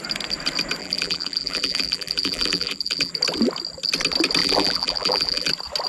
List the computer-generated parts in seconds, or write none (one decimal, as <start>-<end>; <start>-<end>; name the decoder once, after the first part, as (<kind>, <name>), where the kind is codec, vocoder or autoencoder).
0.8-3.1 (vocoder, BigVGAN v2); 4.4-5.5